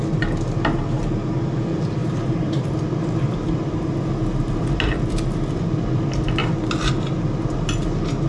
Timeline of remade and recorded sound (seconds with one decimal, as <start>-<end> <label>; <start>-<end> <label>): 0.0-2.0 recorded; 2.0-3.0 remade; 3.0-8.3 recorded